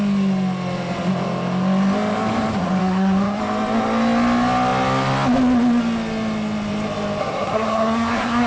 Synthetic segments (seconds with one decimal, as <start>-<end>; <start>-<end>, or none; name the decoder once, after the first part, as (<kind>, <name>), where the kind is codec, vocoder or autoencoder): 2.8-3.4 (codec, SNAC); 7.2-8.5

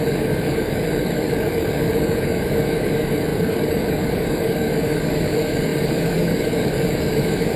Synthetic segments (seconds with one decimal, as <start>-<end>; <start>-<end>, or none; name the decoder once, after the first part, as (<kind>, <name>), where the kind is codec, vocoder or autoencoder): 0.0-7.6 (codec, DAC)

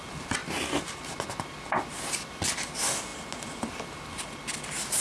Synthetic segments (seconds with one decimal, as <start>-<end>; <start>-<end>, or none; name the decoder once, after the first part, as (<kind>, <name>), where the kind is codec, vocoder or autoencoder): none

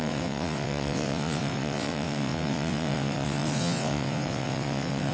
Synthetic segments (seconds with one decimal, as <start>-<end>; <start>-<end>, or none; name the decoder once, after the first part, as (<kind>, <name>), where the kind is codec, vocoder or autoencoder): 0.0-5.1 (vocoder, WaveNeXt)

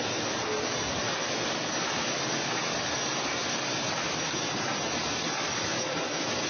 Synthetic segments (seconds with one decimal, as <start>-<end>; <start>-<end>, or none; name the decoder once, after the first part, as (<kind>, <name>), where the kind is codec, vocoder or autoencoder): none

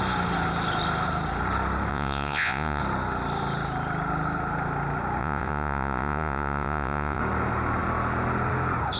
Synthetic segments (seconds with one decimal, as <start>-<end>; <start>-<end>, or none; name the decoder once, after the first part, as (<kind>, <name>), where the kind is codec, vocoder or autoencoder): 1.9-2.8 (vocoder, Vocos); 5.2-7.2

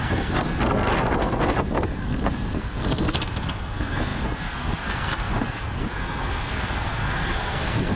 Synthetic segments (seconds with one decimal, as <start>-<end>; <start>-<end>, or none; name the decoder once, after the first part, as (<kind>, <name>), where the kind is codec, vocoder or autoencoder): 0.0-8.0 (codec, SNAC)

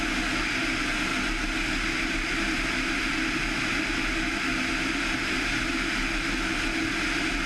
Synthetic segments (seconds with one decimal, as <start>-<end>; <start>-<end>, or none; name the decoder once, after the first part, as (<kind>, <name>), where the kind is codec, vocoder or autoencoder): none